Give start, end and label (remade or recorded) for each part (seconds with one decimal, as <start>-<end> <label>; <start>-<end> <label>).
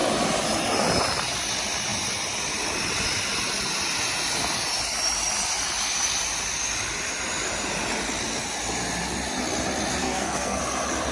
0.0-10.0 recorded; 10.0-10.6 remade; 10.6-11.1 recorded